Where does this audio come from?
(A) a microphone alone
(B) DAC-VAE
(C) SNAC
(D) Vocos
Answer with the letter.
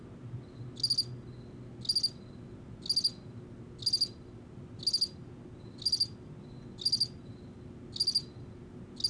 A